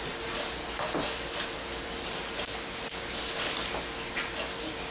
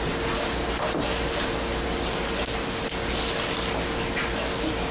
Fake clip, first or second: second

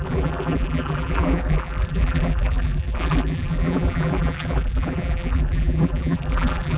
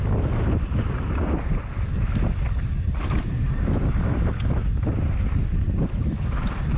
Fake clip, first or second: first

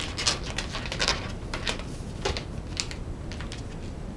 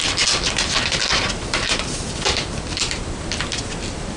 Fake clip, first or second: second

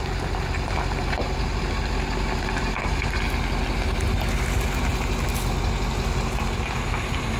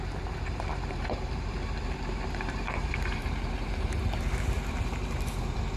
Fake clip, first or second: second